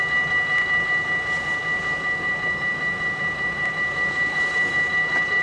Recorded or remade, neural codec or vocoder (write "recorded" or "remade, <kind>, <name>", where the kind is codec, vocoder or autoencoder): recorded